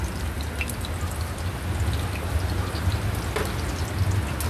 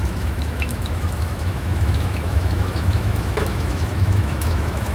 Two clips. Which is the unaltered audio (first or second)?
first